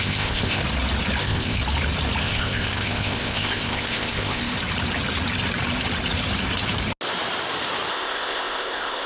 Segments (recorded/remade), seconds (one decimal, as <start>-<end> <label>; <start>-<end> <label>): 0.0-0.6 remade; 0.6-1.2 recorded; 1.2-1.6 remade; 1.6-2.2 recorded; 2.2-4.5 remade; 4.5-7.9 recorded; 7.9-9.1 remade